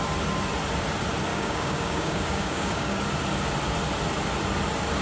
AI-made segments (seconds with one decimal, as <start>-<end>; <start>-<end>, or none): 1.3-3.0